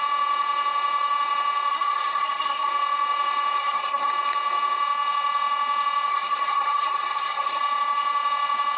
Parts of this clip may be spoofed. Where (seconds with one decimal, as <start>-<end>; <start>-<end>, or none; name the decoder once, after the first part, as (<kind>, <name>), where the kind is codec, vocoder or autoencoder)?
1.7-2.7 (codec, SNAC); 3.6-4.1; 6.1-7.6